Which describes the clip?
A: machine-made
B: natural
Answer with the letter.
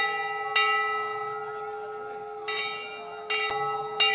B